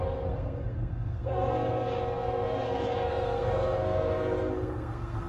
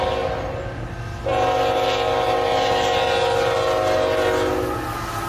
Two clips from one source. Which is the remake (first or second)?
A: first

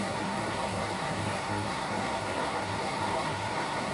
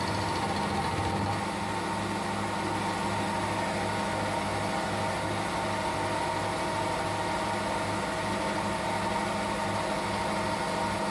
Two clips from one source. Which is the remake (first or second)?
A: first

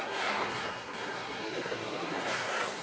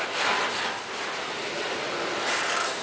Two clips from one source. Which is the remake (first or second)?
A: first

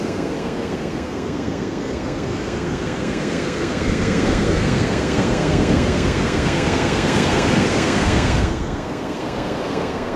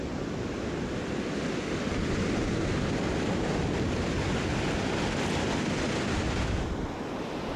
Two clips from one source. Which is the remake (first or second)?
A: first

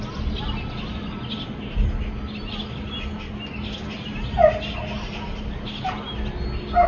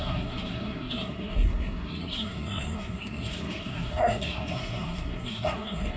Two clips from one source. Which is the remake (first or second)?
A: second